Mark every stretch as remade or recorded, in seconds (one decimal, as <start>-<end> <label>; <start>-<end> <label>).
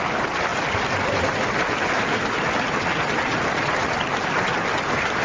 0.0-5.2 recorded